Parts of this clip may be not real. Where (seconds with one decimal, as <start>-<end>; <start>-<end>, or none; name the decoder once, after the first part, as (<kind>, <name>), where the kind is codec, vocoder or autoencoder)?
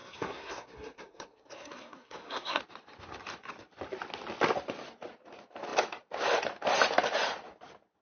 0.0-2.6 (codec, SNAC)